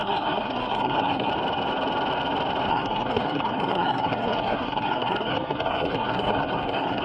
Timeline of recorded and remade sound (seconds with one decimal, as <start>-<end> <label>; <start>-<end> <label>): 0.0-1.3 remade; 1.3-2.7 recorded; 2.7-7.0 remade